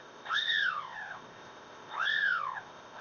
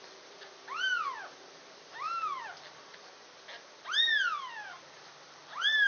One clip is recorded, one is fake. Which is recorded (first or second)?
second